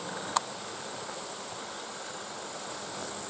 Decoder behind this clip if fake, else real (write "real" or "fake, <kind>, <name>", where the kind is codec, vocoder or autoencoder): real